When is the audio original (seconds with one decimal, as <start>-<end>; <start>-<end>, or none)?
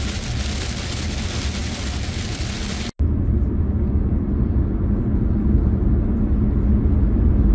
0.0-7.5